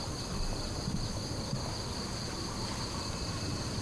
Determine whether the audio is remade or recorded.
recorded